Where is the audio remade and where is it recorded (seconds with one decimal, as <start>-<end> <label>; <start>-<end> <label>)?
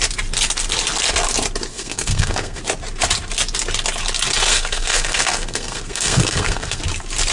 0.0-1.7 recorded; 1.7-2.6 remade; 2.6-4.5 recorded; 4.5-6.8 remade; 6.8-7.3 recorded